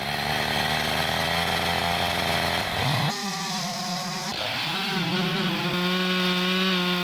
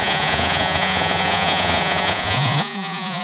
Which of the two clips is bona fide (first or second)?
first